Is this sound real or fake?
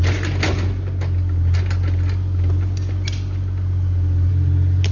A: real